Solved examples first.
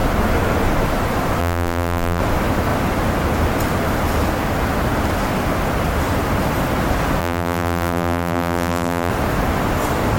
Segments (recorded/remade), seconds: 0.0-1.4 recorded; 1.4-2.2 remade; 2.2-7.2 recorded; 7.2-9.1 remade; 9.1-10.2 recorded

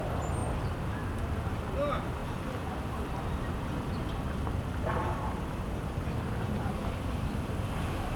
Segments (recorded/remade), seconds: 0.0-5.0 recorded; 5.0-6.7 remade; 6.7-8.2 recorded

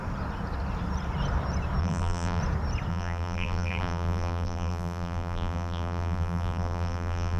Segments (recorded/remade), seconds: 0.0-1.8 recorded; 1.8-2.4 remade; 2.4-2.9 recorded; 2.9-7.4 remade

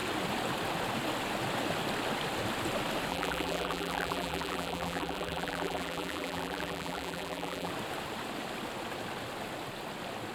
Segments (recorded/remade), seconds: 0.0-3.1 recorded; 3.1-7.7 remade; 7.7-10.3 recorded

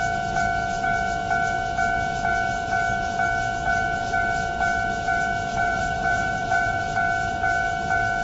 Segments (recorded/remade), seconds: 0.0-5.5 recorded; 5.5-6.8 remade; 6.8-8.2 recorded

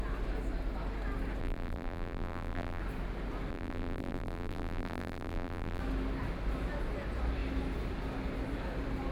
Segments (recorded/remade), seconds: 0.0-1.4 recorded; 1.4-2.8 remade; 2.8-3.5 recorded; 3.5-5.8 remade; 5.8-9.1 recorded

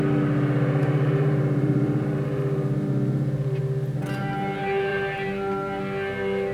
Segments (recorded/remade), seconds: 0.0-0.8 recorded; 0.8-3.6 remade; 3.6-4.9 recorded; 4.9-5.8 remade; 5.8-6.5 recorded

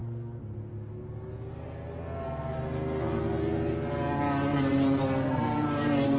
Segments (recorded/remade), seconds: 0.0-4.5 recorded; 4.5-6.2 remade